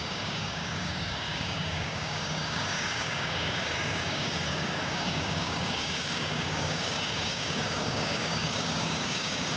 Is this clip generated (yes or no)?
yes